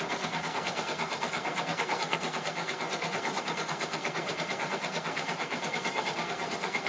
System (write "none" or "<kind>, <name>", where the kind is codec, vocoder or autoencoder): codec, SNAC